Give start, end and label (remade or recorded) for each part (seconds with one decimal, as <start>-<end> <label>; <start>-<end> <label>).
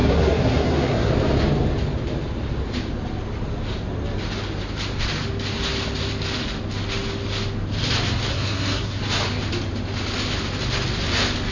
0.0-1.1 remade; 1.1-8.3 recorded; 8.3-9.0 remade; 9.0-11.5 recorded